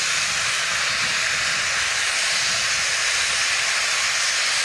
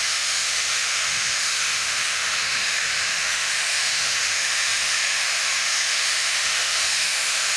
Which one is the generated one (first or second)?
second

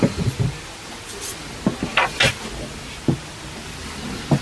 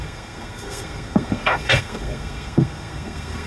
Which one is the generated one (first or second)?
second